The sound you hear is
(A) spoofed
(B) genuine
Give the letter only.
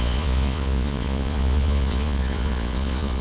A